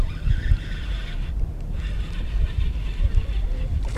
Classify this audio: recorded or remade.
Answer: recorded